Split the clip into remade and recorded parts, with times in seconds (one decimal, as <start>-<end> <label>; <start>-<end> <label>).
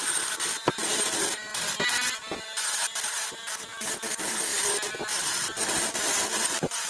0.0-6.9 recorded